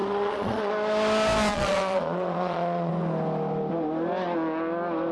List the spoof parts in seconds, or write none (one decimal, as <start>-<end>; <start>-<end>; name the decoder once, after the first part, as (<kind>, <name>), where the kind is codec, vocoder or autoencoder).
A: 0.0-0.7 (vocoder, Vocos); 1.5-2.9